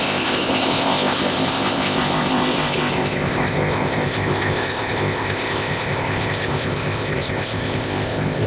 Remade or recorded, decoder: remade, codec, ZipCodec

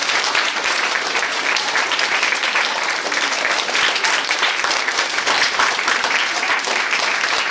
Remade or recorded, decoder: remade, vocoder, BigVGAN v2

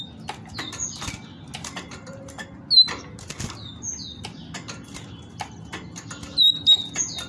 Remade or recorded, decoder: recorded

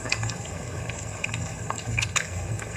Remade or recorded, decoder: remade, codec, SNAC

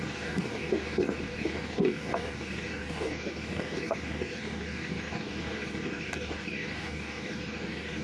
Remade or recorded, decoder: remade, codec, DAC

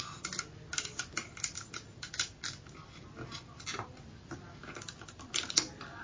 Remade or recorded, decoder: recorded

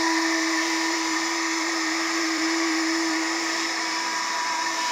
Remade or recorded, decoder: remade, vocoder, BigVGAN v2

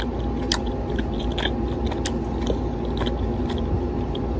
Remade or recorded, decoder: recorded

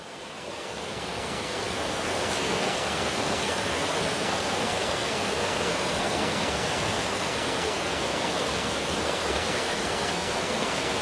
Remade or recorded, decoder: remade, codec, SNAC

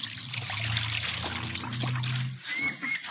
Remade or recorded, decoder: recorded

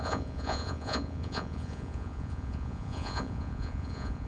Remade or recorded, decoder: remade, vocoder, Vocos